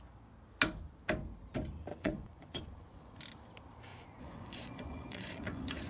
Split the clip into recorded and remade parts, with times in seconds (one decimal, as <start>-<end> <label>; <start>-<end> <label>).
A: 0.0-1.9 recorded; 1.9-3.2 remade; 3.2-3.9 recorded; 3.9-5.9 remade